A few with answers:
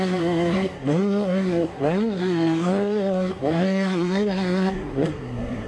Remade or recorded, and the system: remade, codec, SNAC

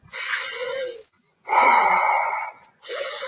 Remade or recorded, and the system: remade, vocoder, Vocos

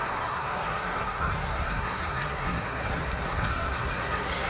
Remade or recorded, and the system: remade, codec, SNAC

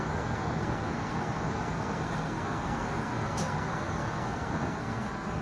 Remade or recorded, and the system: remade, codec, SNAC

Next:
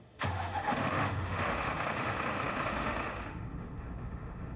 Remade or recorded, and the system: remade, autoencoder, DAC-VAE